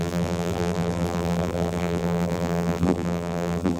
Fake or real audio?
fake